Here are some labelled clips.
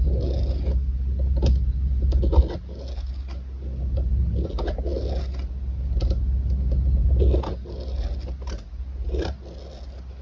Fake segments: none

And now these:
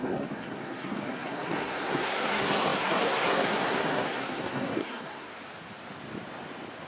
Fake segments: 0.0-5.3 (codec, SNAC)